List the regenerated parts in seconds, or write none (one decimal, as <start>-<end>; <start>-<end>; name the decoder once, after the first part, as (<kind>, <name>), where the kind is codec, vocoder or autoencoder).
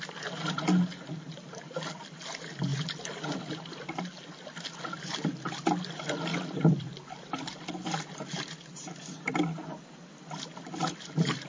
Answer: 6.3-6.9 (vocoder, BigVGAN v2)